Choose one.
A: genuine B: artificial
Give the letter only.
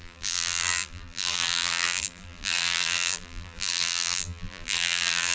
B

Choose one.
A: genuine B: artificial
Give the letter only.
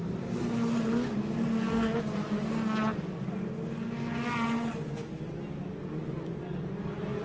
A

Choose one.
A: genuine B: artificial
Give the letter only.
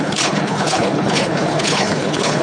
B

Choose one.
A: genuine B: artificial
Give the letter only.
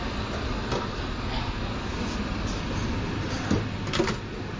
A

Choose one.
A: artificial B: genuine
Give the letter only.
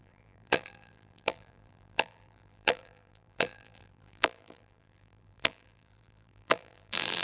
A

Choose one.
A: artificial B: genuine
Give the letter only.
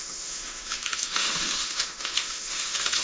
A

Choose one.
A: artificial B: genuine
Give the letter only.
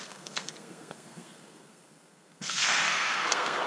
A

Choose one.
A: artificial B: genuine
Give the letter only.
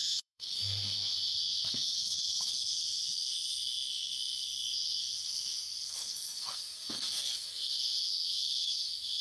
A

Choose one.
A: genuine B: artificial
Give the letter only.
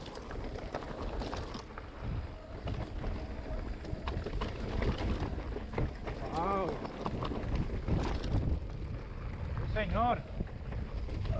A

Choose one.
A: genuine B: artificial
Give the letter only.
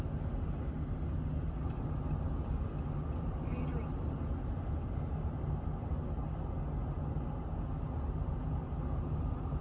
A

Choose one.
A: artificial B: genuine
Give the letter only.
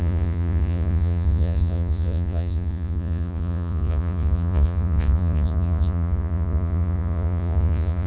A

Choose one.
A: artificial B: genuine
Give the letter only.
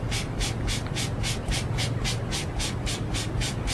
B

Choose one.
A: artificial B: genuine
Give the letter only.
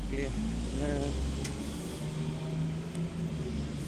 B